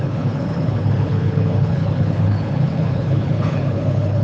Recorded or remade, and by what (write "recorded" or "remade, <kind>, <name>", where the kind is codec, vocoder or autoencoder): remade, codec, HILCodec